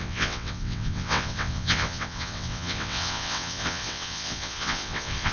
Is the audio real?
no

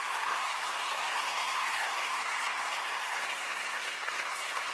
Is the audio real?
no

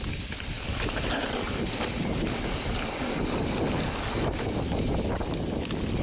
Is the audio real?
yes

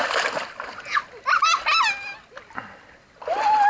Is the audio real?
yes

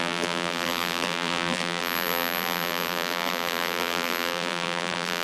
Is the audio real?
no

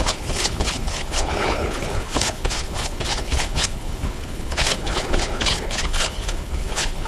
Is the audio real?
no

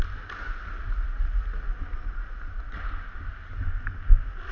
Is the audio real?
yes